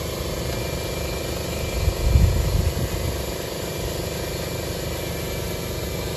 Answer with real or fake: real